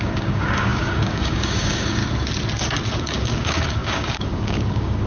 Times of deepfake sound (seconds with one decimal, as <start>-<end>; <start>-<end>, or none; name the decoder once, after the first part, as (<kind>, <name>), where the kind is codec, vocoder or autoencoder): 0.0-2.0 (codec, DAC); 3.0-5.1